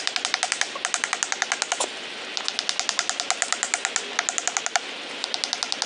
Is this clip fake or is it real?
real